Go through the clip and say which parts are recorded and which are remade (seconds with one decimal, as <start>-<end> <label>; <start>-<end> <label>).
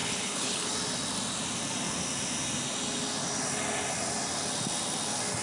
0.0-0.7 remade; 0.7-5.4 recorded